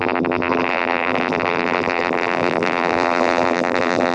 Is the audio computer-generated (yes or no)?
yes